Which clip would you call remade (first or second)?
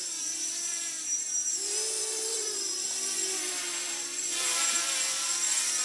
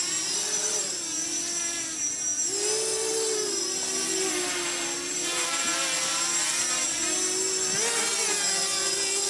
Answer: first